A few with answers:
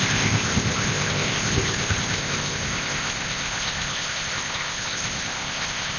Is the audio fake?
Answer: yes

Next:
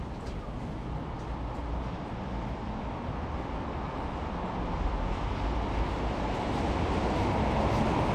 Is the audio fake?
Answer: no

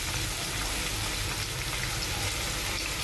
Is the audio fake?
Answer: no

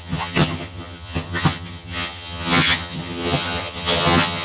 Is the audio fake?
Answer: yes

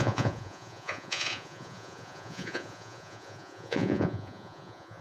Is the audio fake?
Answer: yes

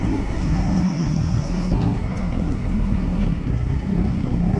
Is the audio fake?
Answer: yes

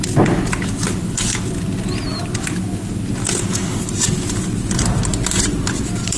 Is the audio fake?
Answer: no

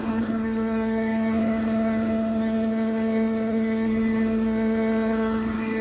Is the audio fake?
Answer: yes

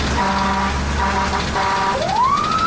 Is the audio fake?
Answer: no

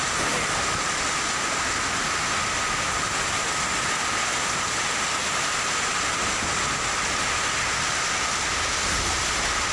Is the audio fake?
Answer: no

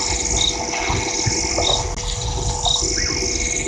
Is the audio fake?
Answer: no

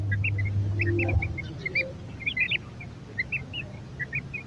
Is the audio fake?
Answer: no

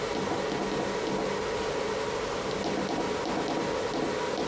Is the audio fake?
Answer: no